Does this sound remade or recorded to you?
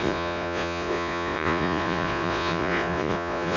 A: remade